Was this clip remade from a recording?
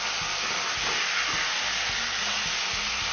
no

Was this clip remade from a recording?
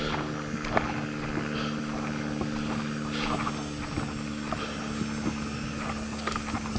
no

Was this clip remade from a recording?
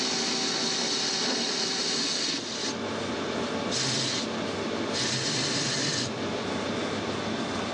no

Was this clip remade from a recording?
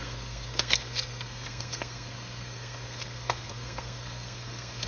yes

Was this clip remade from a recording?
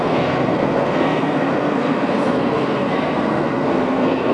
yes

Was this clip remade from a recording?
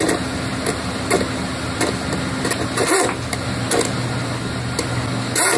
no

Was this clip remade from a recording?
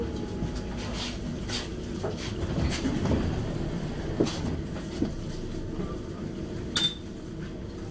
no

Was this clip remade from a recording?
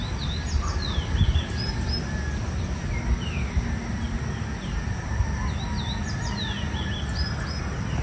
no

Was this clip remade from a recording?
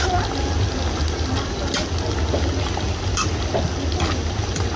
no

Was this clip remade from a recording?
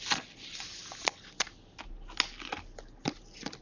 no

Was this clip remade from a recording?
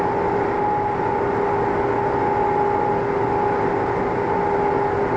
no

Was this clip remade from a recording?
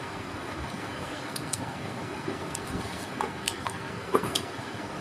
yes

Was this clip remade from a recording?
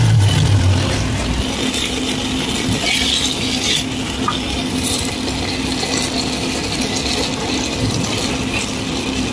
no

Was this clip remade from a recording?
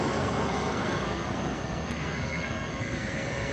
yes